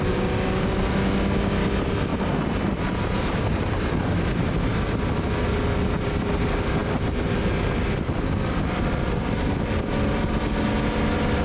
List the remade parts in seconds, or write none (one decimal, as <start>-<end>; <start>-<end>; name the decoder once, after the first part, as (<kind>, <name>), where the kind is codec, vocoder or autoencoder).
none